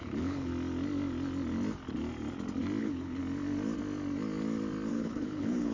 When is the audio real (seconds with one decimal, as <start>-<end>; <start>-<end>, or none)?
0.5-2.8; 3.2-4.9